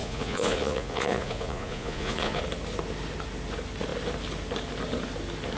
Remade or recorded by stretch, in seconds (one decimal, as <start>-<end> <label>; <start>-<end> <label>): 0.0-2.4 remade; 2.4-5.6 recorded